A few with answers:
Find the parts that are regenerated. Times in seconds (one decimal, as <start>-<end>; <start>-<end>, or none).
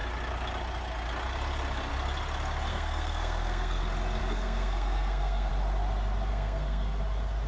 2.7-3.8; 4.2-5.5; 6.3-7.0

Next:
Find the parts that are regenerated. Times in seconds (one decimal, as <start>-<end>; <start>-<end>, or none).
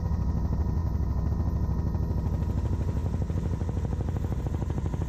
none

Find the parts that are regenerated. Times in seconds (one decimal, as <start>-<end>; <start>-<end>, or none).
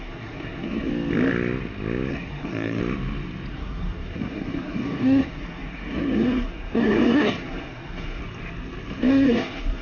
0.0-0.9; 2.1-2.8; 3.5-8.2; 9.1-9.8